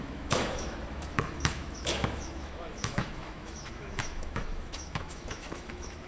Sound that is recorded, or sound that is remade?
remade